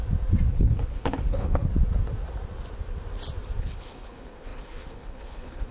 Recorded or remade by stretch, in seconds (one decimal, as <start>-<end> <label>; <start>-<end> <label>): 0.0-0.5 recorded; 0.5-1.7 remade; 1.7-3.6 recorded; 3.6-5.7 remade

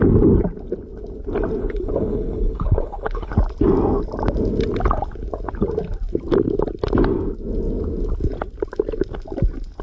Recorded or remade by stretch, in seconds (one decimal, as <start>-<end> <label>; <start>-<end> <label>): 0.0-1.6 recorded; 1.6-3.3 remade; 3.3-9.8 recorded